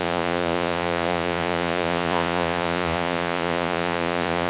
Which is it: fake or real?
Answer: fake